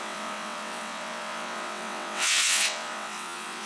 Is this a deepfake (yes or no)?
yes